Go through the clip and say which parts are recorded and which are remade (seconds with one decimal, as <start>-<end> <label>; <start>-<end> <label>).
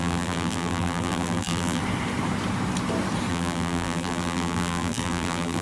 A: 0.0-1.8 remade; 1.8-3.3 recorded; 3.3-5.6 remade